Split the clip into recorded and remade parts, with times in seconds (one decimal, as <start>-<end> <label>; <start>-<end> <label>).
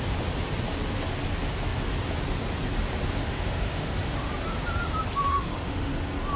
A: 0.0-3.2 recorded; 3.2-4.3 remade; 4.3-5.3 recorded; 5.3-5.9 remade; 5.9-6.4 recorded